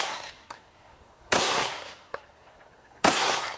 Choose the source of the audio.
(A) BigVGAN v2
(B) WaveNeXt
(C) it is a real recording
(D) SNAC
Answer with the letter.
D